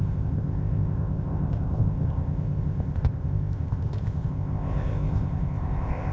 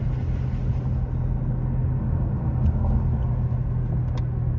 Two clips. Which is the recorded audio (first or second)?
second